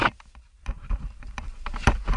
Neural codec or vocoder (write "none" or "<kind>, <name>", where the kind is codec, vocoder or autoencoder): vocoder, BigVGAN v2